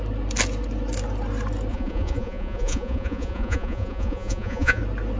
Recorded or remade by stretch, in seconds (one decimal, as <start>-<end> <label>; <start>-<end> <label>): 0.0-1.7 recorded; 1.7-4.8 remade; 4.8-5.2 recorded